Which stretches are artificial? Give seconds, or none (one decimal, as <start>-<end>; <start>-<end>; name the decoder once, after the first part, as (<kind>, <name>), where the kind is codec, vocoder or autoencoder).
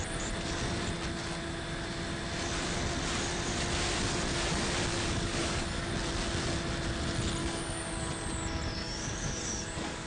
4.9-5.9 (codec, DAC); 7.4-8.1; 8.8-10.1